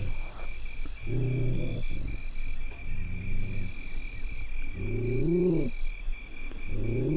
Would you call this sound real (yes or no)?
yes